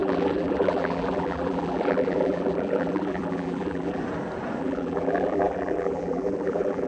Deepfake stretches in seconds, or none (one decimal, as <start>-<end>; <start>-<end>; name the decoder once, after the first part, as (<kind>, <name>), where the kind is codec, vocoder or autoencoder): 0.0-4.0 (vocoder, BigVGAN v2); 4.6-6.9